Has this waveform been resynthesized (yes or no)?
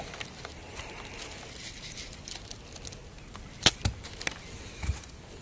no